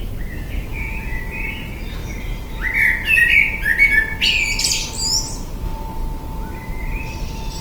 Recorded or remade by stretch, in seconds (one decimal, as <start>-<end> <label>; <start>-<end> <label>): 0.0-0.7 recorded; 0.7-1.2 remade; 1.2-7.6 recorded